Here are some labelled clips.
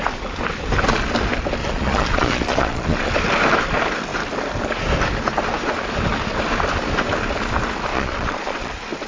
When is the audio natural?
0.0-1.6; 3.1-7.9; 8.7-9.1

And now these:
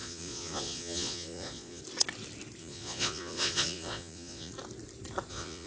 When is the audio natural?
1.8-2.6; 4.5-5.3

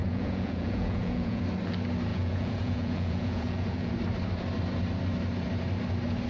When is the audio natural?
1.4-2.1; 3.9-6.3

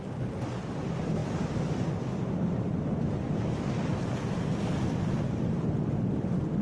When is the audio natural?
0.0-6.6

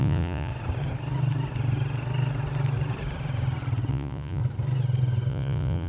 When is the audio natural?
0.5-3.9; 4.4-5.3